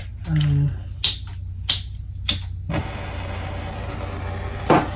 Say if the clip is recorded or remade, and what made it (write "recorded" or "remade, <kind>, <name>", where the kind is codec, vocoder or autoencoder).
recorded